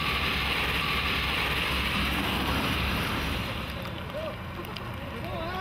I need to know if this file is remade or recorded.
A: recorded